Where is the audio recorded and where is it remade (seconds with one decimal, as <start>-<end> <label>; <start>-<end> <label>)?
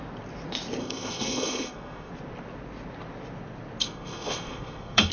0.0-0.8 recorded; 0.8-2.1 remade; 2.1-3.8 recorded; 3.8-5.1 remade